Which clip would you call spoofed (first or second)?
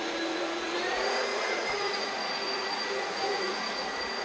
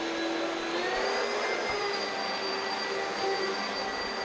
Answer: first